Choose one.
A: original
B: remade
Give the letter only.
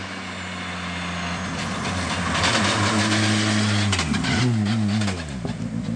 A